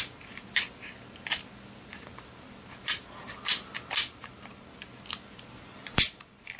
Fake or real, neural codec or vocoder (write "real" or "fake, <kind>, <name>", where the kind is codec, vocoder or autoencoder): real